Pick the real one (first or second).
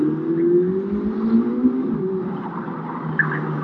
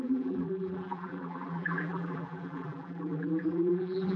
first